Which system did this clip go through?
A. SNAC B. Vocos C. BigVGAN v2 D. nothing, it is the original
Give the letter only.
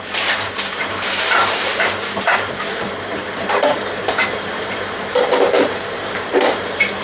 C